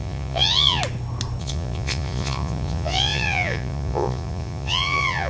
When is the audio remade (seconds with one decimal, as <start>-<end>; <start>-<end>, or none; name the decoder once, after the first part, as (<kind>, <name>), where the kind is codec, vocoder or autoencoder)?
0.0-0.8 (vocoder, Vocos); 1.4-5.3